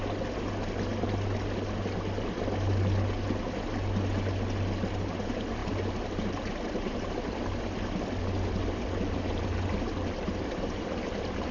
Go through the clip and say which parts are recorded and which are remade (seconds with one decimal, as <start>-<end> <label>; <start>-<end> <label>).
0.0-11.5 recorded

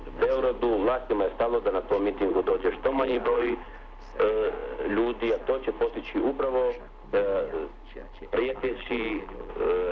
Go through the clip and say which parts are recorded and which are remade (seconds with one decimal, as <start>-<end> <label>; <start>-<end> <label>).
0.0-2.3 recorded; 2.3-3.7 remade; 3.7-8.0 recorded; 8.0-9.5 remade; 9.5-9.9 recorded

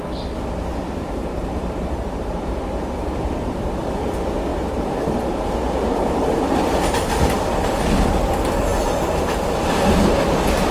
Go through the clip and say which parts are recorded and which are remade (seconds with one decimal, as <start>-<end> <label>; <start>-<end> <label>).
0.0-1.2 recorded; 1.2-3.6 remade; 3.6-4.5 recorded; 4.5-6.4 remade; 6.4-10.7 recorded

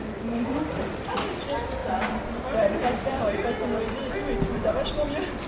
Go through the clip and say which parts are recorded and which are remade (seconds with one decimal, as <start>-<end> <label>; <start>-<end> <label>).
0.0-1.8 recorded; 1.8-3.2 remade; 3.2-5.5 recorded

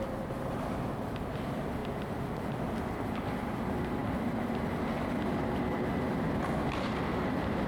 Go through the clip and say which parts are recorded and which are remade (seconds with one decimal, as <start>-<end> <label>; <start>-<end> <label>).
0.0-1.8 remade; 1.8-2.7 recorded; 2.7-7.7 remade

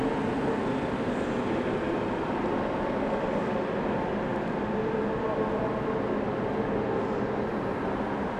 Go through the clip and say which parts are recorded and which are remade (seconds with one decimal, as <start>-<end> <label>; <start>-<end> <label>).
0.0-8.4 recorded